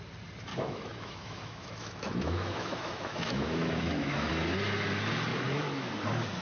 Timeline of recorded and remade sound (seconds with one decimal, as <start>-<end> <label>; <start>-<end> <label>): 0.0-0.5 recorded; 0.5-4.3 remade; 4.3-5.3 recorded; 5.3-5.9 remade; 5.9-6.4 recorded